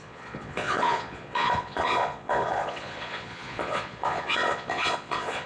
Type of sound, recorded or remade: remade